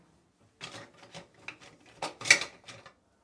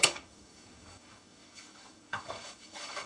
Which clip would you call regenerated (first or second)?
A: second